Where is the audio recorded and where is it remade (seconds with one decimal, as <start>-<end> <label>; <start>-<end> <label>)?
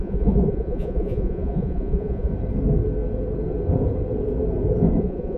0.0-2.3 remade; 2.3-5.0 recorded; 5.0-5.4 remade